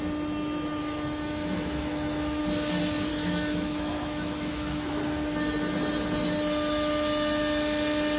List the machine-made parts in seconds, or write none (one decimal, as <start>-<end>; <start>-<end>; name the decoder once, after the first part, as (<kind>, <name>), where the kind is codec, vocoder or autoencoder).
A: 0.8-2.4 (autoencoder, DAC-VAE); 3.1-4.9